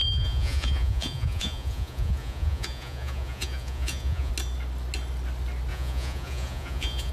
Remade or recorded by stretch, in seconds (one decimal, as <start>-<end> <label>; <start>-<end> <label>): 0.0-4.3 remade; 4.3-5.7 recorded; 5.7-7.1 remade